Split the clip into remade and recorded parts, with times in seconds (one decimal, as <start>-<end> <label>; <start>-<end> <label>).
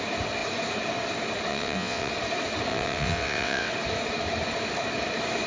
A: 0.0-1.5 recorded; 1.5-2.1 remade; 2.1-2.7 recorded; 2.7-3.7 remade; 3.7-5.5 recorded